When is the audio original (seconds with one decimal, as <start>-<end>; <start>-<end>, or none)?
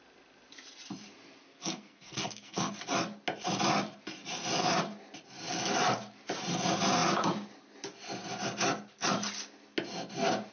0.0-1.4; 2.7-10.5